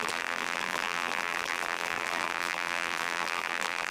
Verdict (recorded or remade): remade